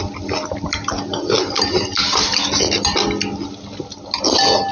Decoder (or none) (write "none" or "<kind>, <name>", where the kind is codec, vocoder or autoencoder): none